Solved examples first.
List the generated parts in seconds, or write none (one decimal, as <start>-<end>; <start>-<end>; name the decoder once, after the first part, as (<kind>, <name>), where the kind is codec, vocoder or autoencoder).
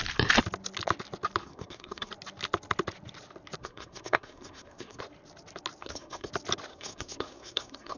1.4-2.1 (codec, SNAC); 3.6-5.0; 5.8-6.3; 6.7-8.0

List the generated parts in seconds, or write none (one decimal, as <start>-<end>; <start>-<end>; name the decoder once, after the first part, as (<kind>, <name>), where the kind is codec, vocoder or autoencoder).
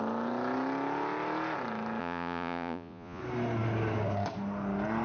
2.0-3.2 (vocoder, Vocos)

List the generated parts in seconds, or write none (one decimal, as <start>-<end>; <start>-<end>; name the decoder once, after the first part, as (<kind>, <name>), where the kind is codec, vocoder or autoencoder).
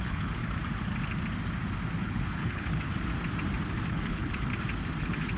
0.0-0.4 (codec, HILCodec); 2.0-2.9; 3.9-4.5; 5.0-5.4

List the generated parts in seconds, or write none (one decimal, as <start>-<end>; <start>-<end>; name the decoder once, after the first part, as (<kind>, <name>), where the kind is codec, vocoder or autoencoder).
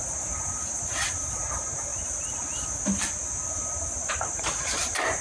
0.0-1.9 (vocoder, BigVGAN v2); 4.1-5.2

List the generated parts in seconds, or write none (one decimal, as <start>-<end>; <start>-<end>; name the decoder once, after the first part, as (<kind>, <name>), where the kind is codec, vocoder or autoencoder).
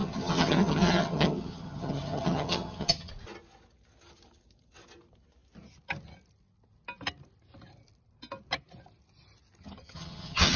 0.0-3.1 (vocoder, HiFi-GAN); 9.6-10.6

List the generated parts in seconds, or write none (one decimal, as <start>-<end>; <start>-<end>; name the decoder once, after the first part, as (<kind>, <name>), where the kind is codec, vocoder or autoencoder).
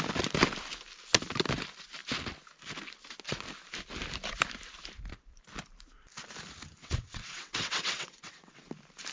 6.8-8.7 (vocoder, WaveNeXt)